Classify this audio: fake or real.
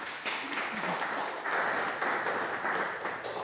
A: real